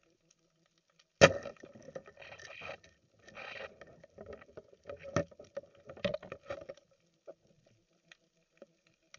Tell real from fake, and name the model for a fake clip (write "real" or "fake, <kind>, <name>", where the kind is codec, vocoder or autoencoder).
real